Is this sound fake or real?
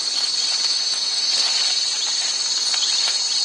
real